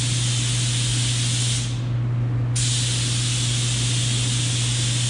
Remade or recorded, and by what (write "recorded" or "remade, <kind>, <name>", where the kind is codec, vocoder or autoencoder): recorded